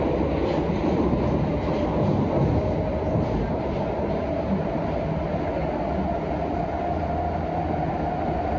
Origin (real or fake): real